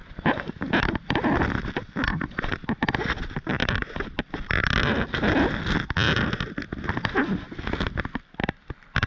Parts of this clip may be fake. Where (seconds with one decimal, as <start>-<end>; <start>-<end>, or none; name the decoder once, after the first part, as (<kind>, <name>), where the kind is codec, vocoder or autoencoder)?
0.0-0.5 (vocoder, Vocos)